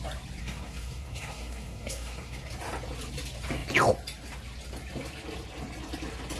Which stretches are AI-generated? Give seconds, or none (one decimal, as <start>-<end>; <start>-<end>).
0.4-2.5